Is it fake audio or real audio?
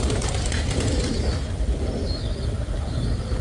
real